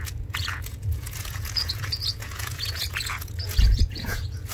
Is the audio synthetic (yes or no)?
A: yes